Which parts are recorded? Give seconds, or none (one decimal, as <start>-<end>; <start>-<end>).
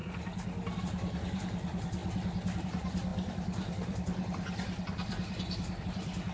0.0-0.8; 2.0-2.6